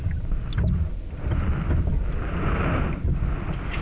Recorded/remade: recorded